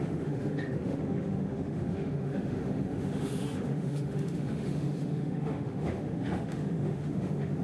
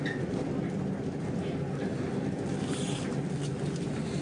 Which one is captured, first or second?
second